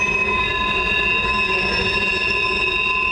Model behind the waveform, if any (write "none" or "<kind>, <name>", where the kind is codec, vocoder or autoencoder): none